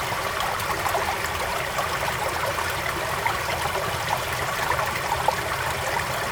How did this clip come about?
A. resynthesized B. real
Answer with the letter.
B